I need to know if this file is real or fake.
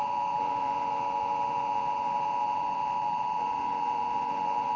fake